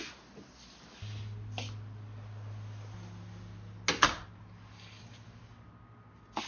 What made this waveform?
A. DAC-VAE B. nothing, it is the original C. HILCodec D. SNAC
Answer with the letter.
B